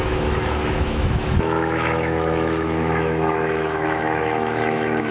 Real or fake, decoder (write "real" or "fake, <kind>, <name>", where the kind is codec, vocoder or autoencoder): fake, autoencoder, DAC-VAE